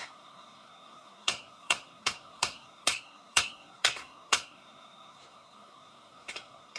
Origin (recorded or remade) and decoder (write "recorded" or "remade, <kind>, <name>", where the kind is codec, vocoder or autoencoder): remade, codec, SNAC